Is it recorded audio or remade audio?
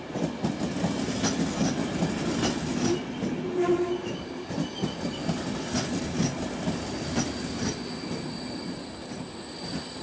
recorded